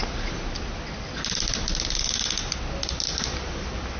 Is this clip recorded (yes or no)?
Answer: yes